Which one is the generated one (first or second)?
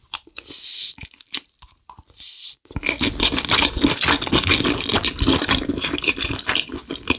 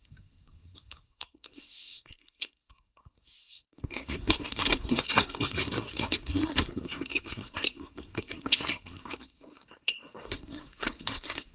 second